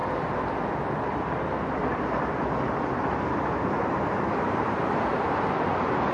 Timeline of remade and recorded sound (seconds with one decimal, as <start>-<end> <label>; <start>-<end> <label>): 0.0-1.8 recorded; 1.8-4.8 remade; 4.8-6.1 recorded